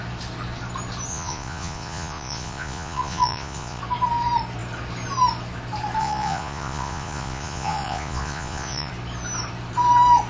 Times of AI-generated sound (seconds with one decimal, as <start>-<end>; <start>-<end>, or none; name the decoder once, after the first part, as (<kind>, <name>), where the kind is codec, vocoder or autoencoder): 1.1-3.8 (vocoder, Vocos); 6.0-8.9